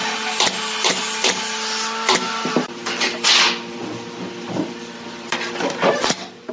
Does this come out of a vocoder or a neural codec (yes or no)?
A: no